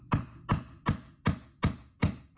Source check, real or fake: real